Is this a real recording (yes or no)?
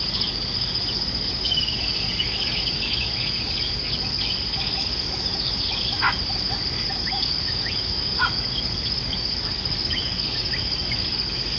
no